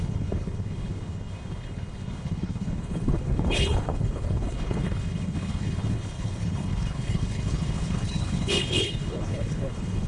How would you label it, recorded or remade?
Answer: remade